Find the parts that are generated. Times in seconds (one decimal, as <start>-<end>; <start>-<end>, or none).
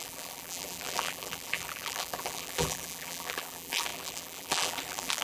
0.0-5.2